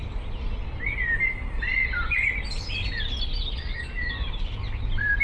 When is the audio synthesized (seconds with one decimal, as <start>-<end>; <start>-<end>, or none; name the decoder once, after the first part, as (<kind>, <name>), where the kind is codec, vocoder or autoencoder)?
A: 3.3-4.1 (vocoder, Vocos)